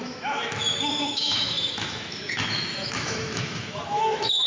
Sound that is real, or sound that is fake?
fake